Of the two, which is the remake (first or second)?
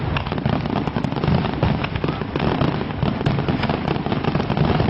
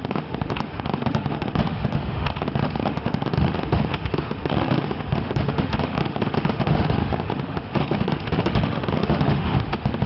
second